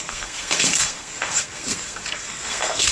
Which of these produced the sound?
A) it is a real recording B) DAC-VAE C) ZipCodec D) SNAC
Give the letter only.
D